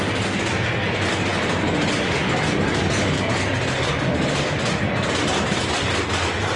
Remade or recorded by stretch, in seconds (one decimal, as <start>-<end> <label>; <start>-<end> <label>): 0.0-6.6 recorded